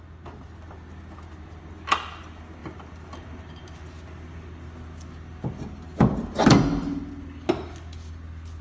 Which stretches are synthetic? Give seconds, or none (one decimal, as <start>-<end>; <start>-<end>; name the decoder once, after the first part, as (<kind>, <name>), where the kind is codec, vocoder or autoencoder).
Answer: none